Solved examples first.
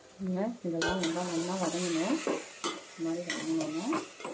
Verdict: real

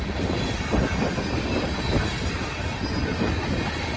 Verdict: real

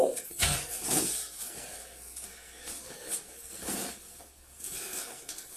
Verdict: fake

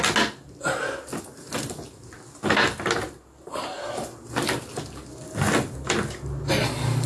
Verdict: real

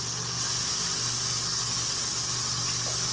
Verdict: real